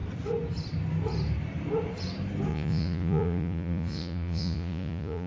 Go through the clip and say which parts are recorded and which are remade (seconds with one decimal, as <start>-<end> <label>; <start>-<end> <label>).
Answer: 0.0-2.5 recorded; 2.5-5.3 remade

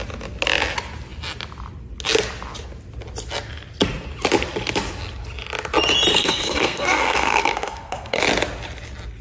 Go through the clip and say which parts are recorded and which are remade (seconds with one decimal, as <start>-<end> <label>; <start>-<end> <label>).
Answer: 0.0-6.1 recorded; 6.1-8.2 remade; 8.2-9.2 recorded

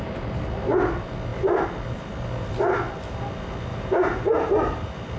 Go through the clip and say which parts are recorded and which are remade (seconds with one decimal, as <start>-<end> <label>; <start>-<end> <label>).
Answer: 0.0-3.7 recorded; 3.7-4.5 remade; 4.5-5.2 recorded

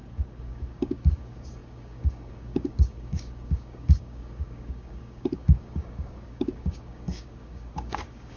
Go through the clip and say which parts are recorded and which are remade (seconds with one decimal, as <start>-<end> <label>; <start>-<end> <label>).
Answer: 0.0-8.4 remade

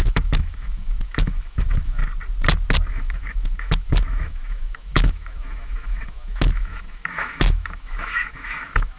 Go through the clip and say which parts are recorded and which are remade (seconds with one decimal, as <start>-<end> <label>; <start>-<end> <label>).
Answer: 0.0-2.0 remade; 2.0-2.9 recorded; 2.9-9.0 remade

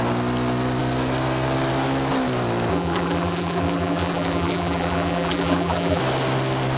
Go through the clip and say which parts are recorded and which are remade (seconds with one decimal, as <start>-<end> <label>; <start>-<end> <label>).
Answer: 0.0-2.7 recorded; 2.7-6.0 remade; 6.0-6.8 recorded

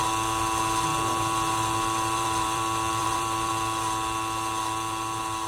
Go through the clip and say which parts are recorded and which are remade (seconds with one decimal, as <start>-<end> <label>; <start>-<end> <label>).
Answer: 0.0-0.9 recorded; 0.9-3.5 remade; 3.5-5.5 recorded